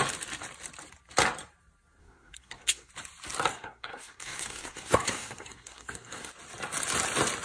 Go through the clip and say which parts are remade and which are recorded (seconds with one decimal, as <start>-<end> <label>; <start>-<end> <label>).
0.0-2.0 recorded; 2.0-2.9 remade; 2.9-3.5 recorded; 3.5-6.3 remade; 6.3-7.4 recorded